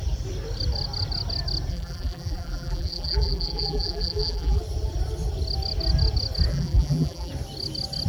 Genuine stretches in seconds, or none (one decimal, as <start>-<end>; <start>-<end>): 0.0-1.7; 4.6-6.5; 7.3-8.1